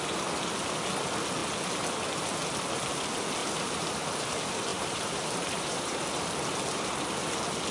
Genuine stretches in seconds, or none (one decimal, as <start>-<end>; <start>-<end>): 0.0-3.4; 3.9-4.7; 6.0-7.7